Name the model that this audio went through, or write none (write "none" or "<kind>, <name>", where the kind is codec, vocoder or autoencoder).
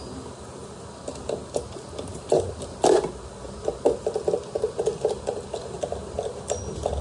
none